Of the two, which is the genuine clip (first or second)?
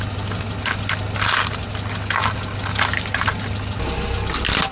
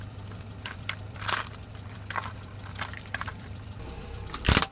first